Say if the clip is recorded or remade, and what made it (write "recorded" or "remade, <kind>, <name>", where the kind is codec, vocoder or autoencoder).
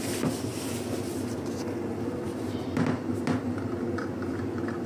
recorded